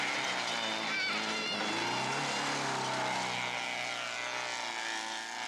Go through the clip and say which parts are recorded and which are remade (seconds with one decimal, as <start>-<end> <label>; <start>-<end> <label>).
0.0-5.5 recorded